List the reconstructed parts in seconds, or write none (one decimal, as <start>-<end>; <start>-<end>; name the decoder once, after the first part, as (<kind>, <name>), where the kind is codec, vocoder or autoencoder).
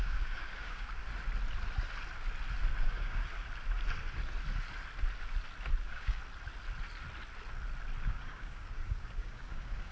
0.0-1.0 (codec, DAC); 2.8-3.2; 5.8-6.2; 8.0-9.9